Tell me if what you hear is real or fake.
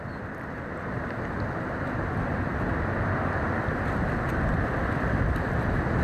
real